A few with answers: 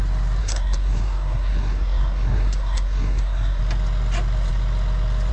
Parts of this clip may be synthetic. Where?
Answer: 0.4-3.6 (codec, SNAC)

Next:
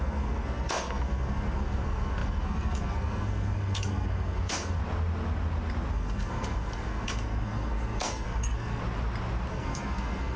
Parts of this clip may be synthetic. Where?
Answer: 0.0-4.8 (codec, SNAC); 5.9-8.8; 9.5-10.4

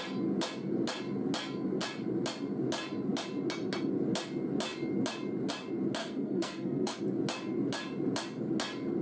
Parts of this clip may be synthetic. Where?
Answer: 6.0-7.0 (codec, SNAC)

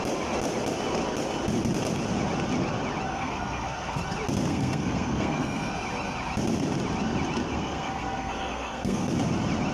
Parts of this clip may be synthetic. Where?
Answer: 3.1-4.0 (codec, SNAC); 4.5-5.7; 7.5-9.1

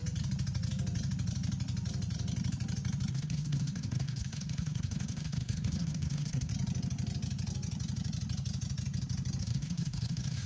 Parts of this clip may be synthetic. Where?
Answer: 3.1-6.5 (codec, SNAC); 9.4-10.5

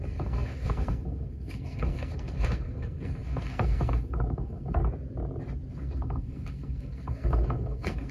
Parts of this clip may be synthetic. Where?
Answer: 0.0-4.8 (codec, SNAC); 5.7-8.1

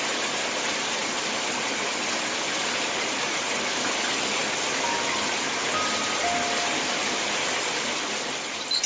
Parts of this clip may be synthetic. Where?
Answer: none

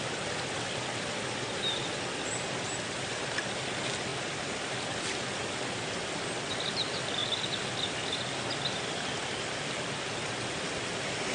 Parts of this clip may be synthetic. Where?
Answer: none